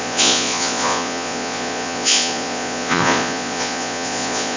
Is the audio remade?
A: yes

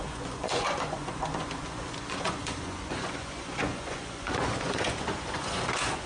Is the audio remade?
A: yes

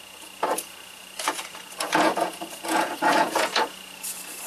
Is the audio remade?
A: yes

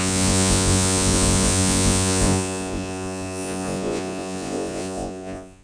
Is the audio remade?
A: yes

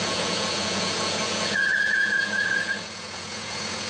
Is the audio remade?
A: yes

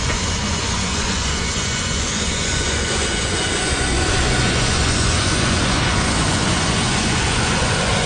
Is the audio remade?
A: yes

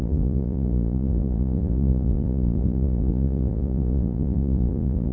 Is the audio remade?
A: yes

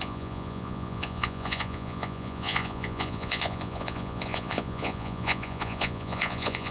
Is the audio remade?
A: yes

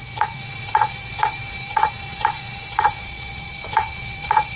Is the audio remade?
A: yes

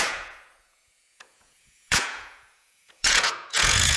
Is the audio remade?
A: yes